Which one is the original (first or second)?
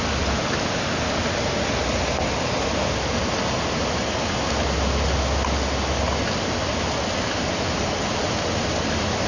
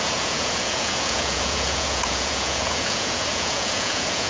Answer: first